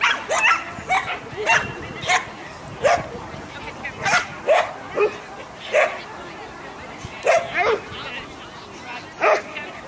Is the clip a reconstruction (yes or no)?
no